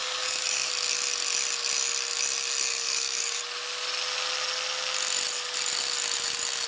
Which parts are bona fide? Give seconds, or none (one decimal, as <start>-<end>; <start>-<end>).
0.7-2.7; 3.4-6.7